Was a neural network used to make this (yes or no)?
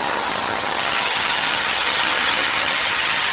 yes